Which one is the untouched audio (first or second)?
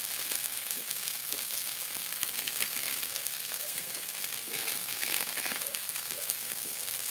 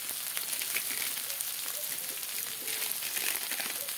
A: second